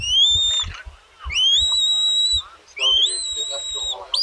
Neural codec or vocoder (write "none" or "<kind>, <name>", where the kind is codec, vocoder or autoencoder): none